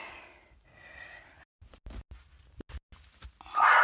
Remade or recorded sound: recorded